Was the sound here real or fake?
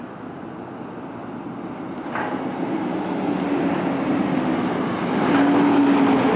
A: real